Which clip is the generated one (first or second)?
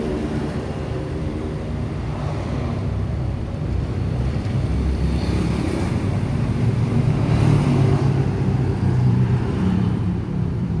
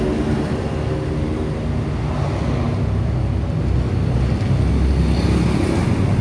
first